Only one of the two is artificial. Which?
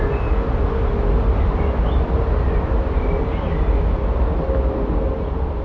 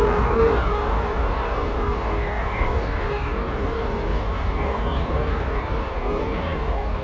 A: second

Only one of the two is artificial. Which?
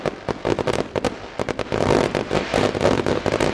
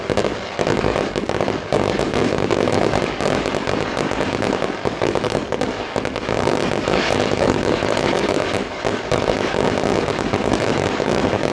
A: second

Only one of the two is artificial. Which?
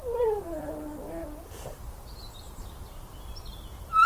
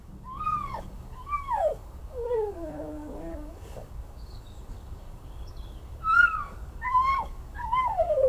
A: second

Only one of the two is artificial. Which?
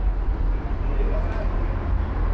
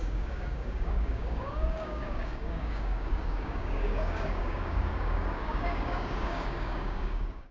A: second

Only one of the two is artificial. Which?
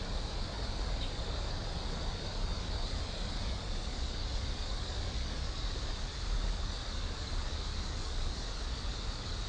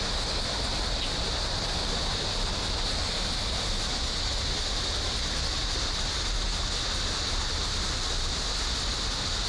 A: first